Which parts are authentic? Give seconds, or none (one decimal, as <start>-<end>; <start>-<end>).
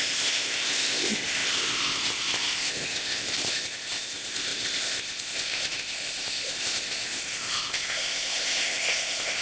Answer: none